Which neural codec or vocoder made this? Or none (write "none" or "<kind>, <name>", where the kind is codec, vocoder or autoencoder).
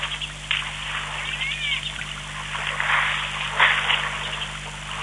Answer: none